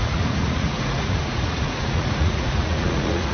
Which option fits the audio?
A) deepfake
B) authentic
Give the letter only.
A